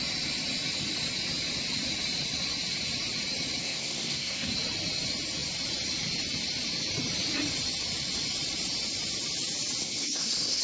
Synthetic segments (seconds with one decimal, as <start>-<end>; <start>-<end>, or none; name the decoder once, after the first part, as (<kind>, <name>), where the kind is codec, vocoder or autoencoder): 3.6-4.5 (codec, SNAC); 9.8-10.6